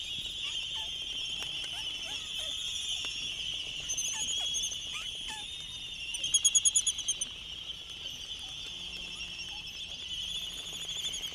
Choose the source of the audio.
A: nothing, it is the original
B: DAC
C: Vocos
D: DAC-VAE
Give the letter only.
A